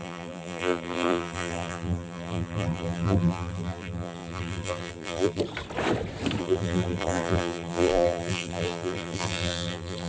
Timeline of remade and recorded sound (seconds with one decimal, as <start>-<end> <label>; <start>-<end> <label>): 0.0-5.4 remade; 5.4-6.4 recorded; 6.4-10.1 remade

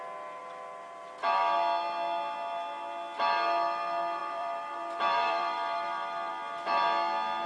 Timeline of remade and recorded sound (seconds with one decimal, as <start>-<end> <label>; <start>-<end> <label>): 0.0-0.4 recorded; 0.4-1.2 remade; 1.2-4.2 recorded; 4.2-6.3 remade; 6.3-7.5 recorded

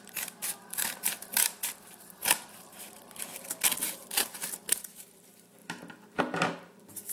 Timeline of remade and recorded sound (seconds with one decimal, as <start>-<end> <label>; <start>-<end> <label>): 0.0-3.3 remade; 3.3-3.8 recorded; 3.8-7.1 remade

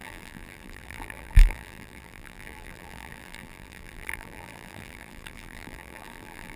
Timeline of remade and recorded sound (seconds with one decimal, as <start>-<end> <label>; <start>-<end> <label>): 0.0-6.6 remade